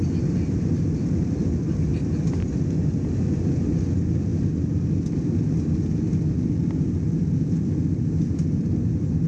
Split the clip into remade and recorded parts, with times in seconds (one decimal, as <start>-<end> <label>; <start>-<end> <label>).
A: 0.0-9.3 recorded